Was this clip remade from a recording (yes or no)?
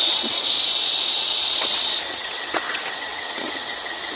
yes